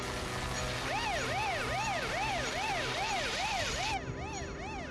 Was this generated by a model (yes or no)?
no